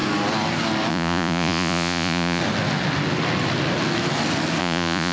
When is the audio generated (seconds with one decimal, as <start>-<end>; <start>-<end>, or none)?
0.9-2.4; 4.6-5.1